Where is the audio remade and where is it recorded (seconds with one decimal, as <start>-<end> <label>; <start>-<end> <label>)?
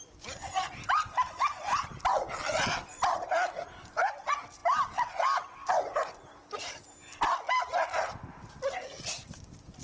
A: 0.0-9.8 recorded